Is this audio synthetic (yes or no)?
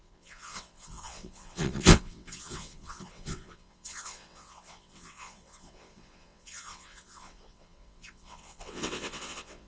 yes